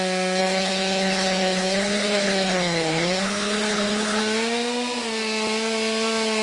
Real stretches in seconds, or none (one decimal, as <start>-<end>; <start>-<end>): 0.0-0.4; 4.2-6.4